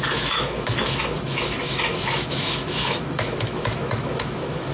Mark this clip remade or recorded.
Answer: remade